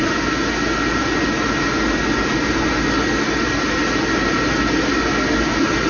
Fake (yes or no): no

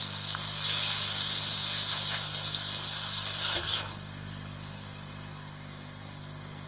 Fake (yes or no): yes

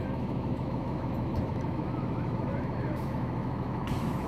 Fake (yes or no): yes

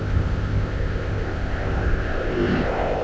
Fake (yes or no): yes